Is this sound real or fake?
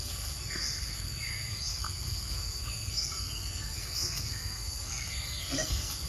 fake